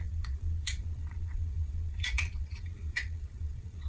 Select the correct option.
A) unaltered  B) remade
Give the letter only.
B